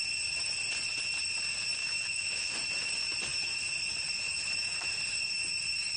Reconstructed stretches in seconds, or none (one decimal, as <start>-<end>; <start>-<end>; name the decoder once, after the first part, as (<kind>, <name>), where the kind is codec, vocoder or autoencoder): 1.8-2.5 (autoencoder, DAC-VAE)